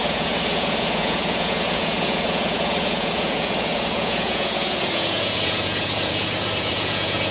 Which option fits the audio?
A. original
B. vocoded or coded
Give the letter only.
B